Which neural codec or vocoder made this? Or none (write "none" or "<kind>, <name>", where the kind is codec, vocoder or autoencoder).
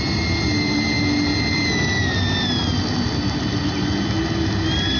none